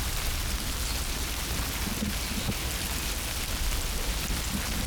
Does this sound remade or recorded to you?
recorded